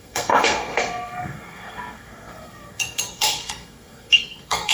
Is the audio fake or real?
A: fake